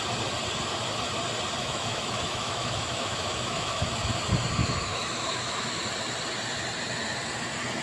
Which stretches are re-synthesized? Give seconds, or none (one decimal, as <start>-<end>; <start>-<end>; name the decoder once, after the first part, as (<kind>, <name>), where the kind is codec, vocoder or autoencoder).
1.6-3.9 (autoencoder, DAC-VAE); 4.6-5.8